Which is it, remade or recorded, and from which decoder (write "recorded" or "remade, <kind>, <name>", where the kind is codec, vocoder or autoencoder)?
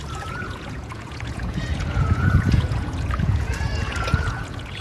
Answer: remade, vocoder, Vocos